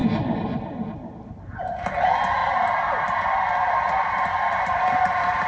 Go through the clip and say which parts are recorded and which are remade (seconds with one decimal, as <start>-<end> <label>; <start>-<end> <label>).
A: 0.0-5.5 recorded